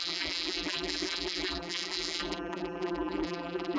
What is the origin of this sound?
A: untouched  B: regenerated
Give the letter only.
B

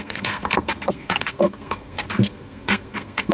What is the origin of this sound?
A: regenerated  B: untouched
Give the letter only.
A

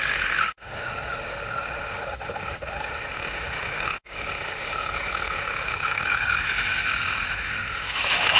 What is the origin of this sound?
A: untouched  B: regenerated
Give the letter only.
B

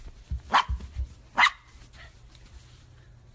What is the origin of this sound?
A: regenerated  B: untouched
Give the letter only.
B